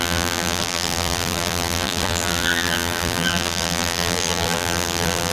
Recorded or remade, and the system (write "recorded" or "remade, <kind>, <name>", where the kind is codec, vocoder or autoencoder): remade, vocoder, BigVGAN v2